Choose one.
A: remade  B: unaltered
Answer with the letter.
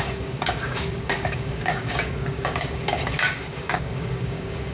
A